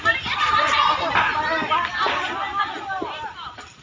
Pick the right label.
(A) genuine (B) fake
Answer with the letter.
A